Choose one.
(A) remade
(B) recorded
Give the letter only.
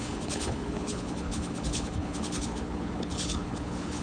A